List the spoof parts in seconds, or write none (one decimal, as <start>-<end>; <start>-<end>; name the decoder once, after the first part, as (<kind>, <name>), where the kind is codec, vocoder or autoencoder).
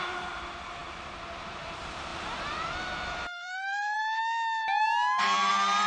0.0-4.0 (vocoder, BigVGAN v2); 5.5-5.9